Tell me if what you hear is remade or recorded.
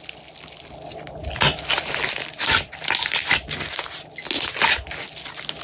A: recorded